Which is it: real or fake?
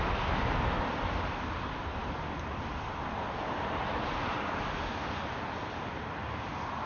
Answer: real